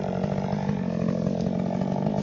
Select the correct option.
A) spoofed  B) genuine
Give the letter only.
B